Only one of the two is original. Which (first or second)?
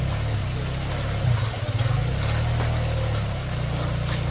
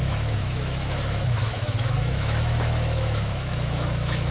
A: first